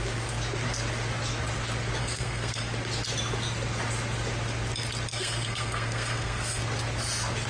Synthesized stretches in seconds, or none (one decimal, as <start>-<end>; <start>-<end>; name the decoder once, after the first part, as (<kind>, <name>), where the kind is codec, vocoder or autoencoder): 2.0-2.6 (codec, SNAC); 5.1-6.6